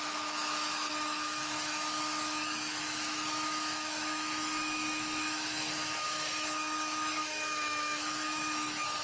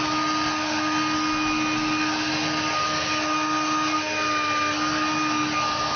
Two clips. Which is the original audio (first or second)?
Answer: second